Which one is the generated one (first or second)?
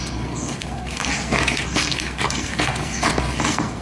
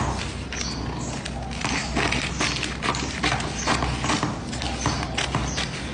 first